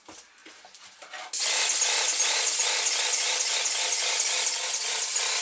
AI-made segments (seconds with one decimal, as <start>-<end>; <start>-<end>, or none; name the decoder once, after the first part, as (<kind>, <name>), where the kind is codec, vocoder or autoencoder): none